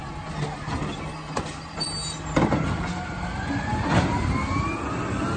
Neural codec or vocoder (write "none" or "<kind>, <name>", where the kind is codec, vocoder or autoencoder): none